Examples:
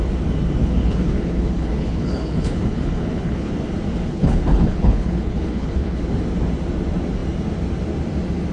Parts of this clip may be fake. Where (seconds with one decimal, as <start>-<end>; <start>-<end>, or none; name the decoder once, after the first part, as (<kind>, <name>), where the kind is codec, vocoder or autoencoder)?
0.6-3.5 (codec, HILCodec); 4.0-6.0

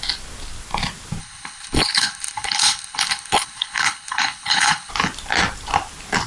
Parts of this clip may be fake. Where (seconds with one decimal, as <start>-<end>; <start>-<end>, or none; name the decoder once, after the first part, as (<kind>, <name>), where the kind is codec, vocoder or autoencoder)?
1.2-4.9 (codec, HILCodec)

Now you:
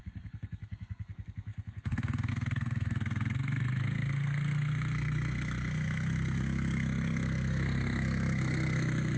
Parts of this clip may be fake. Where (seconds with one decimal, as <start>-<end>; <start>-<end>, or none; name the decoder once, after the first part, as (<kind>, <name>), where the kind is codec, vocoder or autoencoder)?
0.0-9.2 (codec, SNAC)

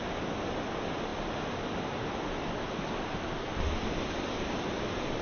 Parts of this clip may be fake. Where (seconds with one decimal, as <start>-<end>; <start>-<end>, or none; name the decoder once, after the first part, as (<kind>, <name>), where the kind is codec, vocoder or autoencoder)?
none

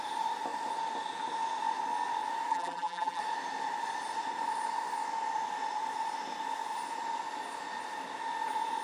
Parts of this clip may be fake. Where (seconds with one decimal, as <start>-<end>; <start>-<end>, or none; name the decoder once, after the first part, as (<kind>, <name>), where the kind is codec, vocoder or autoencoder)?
2.5-3.2 (vocoder, BigVGAN v2)